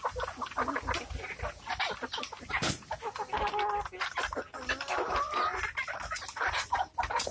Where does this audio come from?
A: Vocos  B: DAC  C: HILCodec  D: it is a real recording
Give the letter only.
D